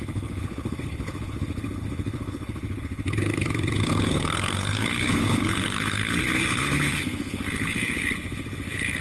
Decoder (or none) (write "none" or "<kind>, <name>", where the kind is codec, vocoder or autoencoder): codec, HILCodec